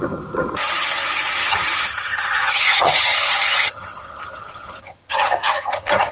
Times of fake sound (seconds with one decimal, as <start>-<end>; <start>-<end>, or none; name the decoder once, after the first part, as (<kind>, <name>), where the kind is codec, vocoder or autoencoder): 0.0-6.1 (vocoder, HiFi-GAN)